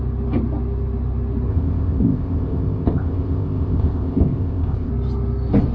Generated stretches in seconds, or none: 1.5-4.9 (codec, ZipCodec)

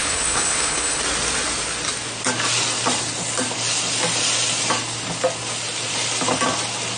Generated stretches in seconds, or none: 0.0-1.0 (codec, HILCodec)

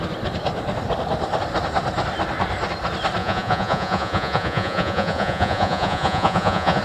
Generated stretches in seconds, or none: 3.2-6.8 (vocoder, Vocos)

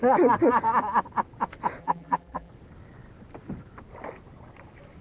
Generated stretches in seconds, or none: 1.8-2.5 (vocoder, BigVGAN v2)

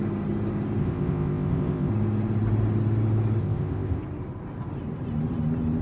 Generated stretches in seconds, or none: 0.8-1.9 (codec, ZipCodec); 3.4-4.0

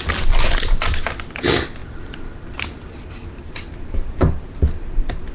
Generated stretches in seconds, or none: none

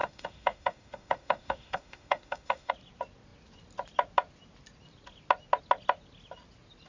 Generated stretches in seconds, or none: 0.0-2.7 (autoencoder, DAC-VAE)

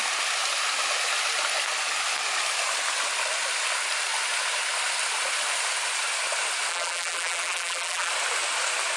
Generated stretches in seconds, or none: 6.7-8.1 (vocoder, BigVGAN v2)